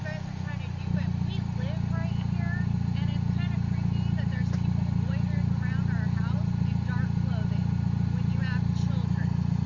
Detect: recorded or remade recorded